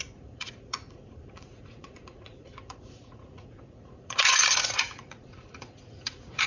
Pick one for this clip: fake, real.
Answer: fake